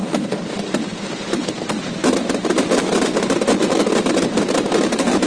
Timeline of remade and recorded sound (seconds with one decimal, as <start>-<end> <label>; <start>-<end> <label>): 0.0-1.9 remade; 1.9-5.3 recorded